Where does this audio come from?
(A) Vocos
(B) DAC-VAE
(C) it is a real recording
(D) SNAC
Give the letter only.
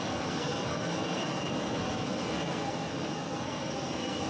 D